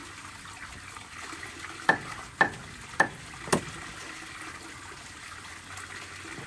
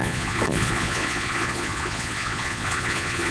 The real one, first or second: first